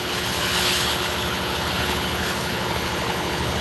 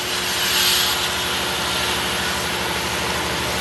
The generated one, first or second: first